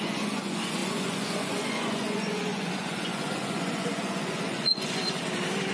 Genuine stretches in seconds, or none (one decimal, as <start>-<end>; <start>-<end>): 5.0-5.7